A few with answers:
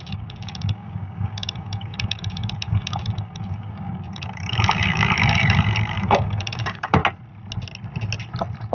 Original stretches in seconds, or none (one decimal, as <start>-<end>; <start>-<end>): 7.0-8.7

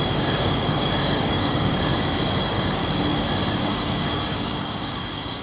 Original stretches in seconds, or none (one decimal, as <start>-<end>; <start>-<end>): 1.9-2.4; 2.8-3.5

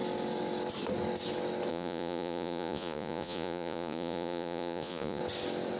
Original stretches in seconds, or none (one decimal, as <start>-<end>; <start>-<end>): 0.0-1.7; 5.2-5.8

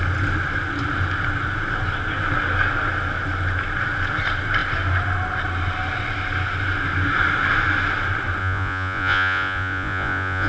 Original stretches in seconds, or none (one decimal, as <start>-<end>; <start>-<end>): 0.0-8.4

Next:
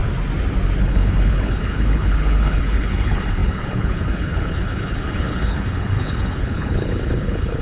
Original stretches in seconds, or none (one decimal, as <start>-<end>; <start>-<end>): 0.0-0.8

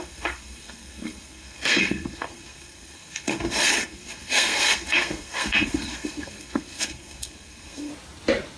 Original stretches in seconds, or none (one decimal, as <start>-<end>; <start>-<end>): 7.9-8.6

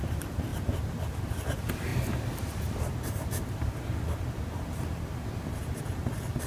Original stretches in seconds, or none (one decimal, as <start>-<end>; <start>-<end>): 0.0-6.5

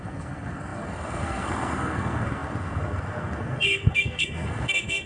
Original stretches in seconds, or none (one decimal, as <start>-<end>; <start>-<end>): none